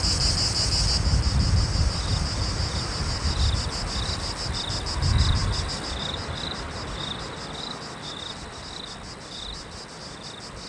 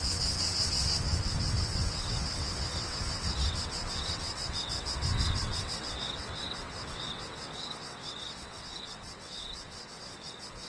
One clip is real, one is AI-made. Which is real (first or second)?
first